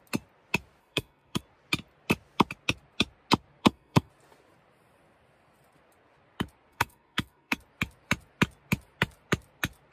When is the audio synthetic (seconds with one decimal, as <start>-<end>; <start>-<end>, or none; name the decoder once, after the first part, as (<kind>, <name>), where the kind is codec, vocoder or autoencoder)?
0.8-1.4 (codec, SNAC); 3.6-4.1; 6.7-7.6